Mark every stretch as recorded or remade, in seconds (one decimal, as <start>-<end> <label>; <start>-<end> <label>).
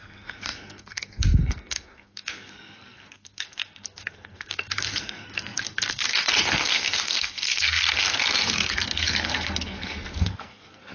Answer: 0.0-10.9 remade